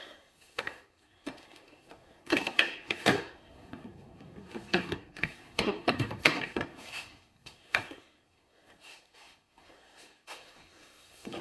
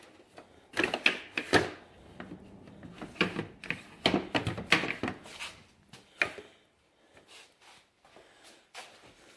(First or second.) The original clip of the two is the second